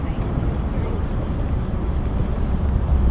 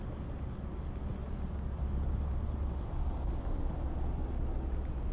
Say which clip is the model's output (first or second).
first